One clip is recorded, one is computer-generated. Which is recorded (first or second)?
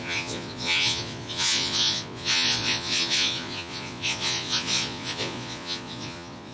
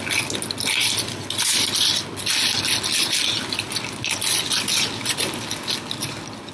second